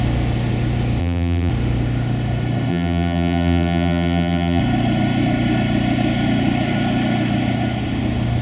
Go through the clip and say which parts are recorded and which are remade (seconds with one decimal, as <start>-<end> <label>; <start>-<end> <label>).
0.0-1.0 recorded; 1.0-1.5 remade; 1.5-2.7 recorded; 2.7-4.6 remade; 4.6-8.4 recorded